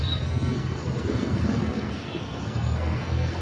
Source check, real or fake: fake